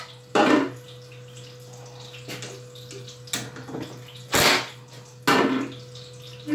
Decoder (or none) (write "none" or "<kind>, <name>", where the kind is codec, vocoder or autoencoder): none